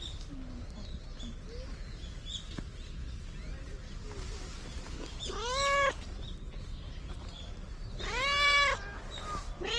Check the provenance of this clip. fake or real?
real